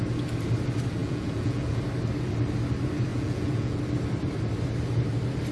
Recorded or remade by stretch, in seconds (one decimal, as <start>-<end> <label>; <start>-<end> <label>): 0.0-1.0 recorded; 1.0-1.8 remade; 1.8-3.1 recorded; 3.1-3.8 remade; 3.8-5.5 recorded